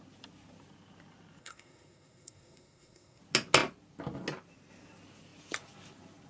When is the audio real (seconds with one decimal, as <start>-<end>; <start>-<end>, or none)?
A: 0.0-1.4; 3.2-6.3